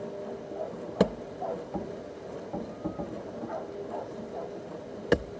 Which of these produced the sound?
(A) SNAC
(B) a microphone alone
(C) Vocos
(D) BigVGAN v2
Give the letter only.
B